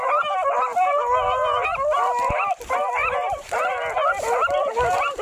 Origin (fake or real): real